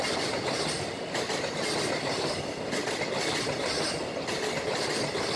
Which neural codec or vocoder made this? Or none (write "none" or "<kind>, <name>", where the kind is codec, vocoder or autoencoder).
none